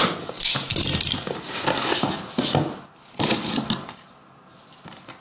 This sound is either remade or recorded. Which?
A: recorded